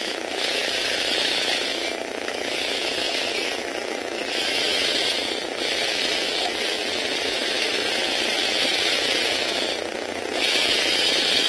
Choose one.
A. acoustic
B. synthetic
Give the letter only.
B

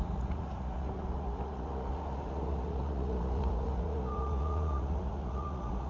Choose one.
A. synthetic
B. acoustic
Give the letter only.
A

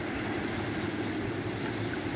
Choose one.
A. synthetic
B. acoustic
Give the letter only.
B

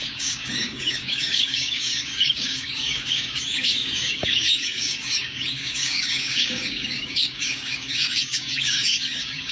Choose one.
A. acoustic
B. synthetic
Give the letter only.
B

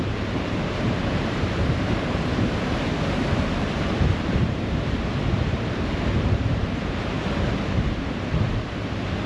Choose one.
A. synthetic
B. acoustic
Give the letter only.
A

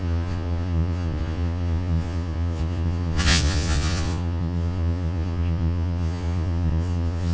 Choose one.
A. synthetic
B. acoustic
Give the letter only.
A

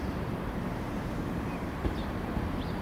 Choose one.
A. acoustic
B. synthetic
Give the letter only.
B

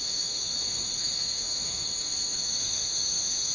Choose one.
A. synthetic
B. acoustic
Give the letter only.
A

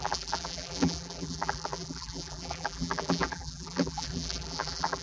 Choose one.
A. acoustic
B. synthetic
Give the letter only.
B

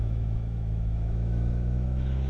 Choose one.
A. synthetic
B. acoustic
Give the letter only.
A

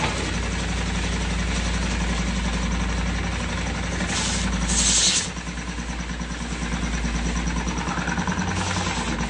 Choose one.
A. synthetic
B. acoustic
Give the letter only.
B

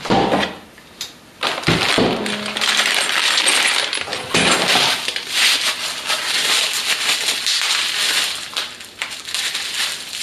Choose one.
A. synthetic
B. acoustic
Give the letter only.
B